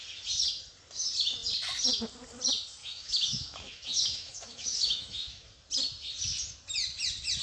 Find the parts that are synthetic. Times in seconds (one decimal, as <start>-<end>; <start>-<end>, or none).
2.8-5.5